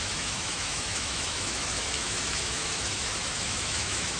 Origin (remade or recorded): remade